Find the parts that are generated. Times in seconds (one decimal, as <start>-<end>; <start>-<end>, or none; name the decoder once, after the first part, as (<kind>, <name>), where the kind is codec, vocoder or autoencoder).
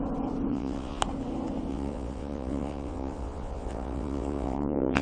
0.5-1.0 (vocoder, WaveNeXt); 1.7-5.0